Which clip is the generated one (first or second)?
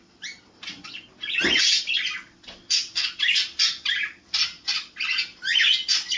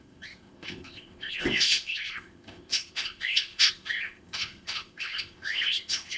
second